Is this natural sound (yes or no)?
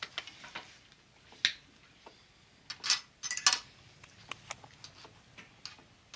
yes